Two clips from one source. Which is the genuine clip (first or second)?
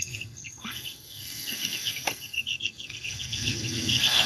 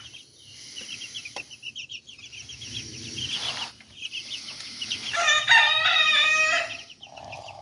second